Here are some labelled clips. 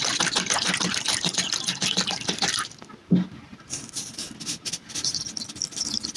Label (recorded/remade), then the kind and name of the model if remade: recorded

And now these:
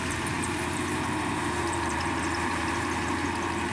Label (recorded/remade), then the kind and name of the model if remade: remade, vocoder, BigVGAN v2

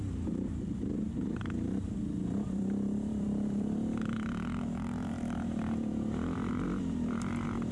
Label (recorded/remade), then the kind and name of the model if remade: remade, vocoder, BigVGAN v2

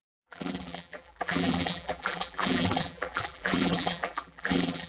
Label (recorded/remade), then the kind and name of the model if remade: remade, vocoder, BigVGAN v2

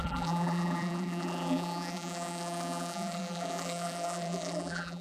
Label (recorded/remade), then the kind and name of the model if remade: remade, vocoder, BigVGAN v2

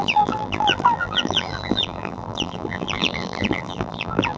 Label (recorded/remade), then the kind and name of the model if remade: remade, vocoder, BigVGAN v2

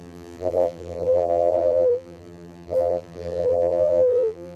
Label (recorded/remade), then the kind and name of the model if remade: remade, vocoder, BigVGAN v2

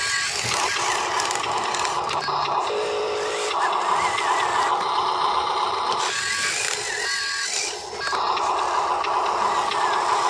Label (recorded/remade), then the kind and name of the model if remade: recorded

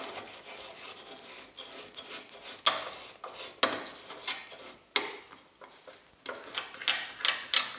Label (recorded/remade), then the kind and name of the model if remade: recorded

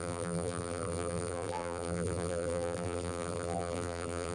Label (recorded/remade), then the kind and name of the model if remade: remade, vocoder, BigVGAN v2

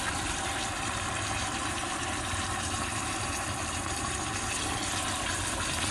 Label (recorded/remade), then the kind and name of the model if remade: remade, vocoder, BigVGAN v2